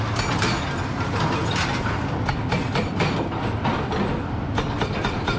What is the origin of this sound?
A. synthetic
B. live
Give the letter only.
B